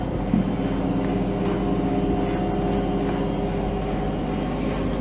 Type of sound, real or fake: real